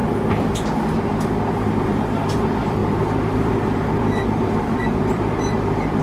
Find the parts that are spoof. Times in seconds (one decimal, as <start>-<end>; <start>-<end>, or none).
1.7-6.0